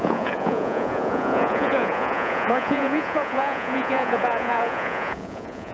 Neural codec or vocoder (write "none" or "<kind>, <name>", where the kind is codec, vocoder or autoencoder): vocoder, Vocos